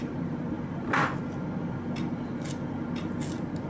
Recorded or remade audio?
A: recorded